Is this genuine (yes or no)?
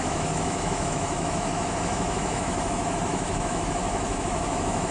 no